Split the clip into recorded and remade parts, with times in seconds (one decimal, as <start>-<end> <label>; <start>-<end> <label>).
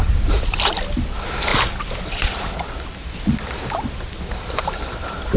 0.0-1.5 remade; 1.5-3.5 recorded; 3.5-5.4 remade